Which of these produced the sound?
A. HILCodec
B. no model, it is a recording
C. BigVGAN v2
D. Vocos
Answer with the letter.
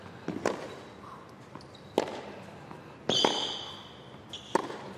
B